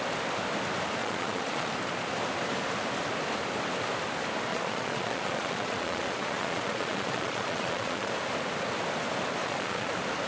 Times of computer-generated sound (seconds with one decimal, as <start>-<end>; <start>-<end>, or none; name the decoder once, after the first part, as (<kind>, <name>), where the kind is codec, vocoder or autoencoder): 1.0-1.7 (vocoder, Vocos); 4.5-8.1; 9.4-9.9